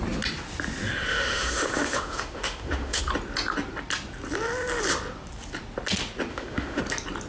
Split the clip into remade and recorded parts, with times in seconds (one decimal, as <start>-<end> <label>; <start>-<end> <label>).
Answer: 0.0-1.1 recorded; 1.1-3.0 remade; 3.0-6.3 recorded; 6.3-6.8 remade; 6.8-7.3 recorded